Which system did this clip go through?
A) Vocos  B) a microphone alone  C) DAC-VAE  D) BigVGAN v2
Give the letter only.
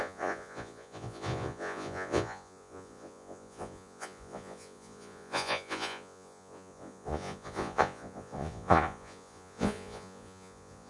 A